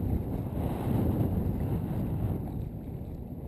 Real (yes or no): yes